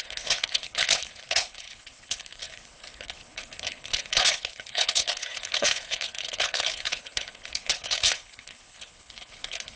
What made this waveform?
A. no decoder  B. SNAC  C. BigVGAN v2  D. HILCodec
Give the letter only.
D